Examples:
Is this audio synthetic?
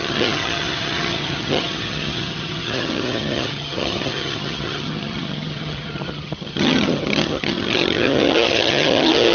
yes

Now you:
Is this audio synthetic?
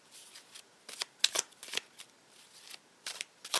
no